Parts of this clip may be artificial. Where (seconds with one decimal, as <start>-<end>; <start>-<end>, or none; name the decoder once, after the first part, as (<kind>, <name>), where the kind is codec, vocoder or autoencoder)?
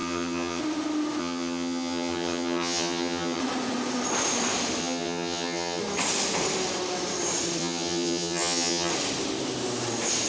0.0-0.6 (vocoder, HiFi-GAN); 1.2-3.4; 4.8-5.8; 7.6-8.9